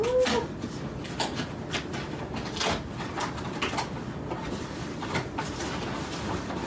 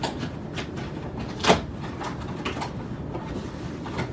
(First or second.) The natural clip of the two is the first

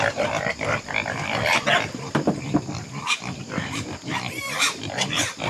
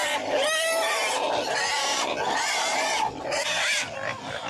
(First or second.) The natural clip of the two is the second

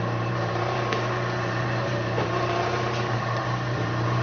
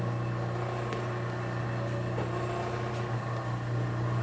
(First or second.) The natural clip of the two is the second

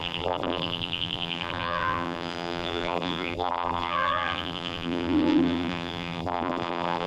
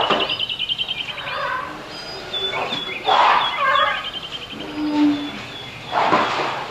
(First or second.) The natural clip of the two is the second